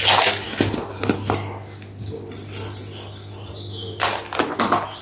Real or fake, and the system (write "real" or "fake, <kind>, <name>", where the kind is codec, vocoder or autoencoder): real